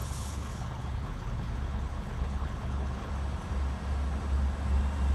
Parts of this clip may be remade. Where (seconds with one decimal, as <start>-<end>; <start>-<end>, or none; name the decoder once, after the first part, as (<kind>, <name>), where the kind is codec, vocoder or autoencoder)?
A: 0.0-3.1 (codec, HILCodec)